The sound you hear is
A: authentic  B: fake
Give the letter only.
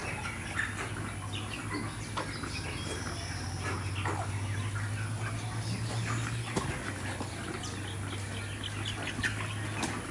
A